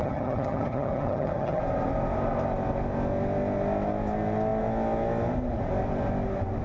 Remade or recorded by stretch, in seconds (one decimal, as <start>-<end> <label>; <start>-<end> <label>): 0.0-1.6 remade; 1.6-6.6 recorded